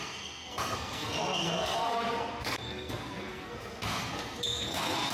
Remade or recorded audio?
remade